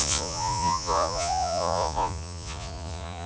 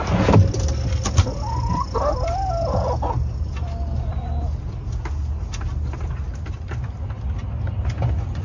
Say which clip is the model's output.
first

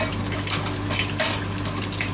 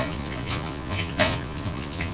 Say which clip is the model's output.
second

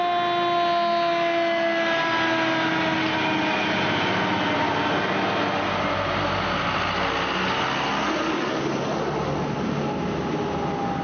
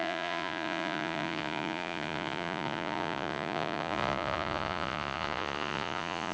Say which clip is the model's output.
second